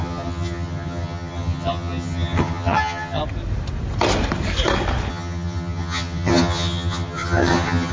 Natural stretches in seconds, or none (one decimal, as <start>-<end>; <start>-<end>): 3.2-5.1